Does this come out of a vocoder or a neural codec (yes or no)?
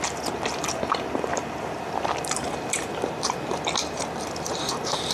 yes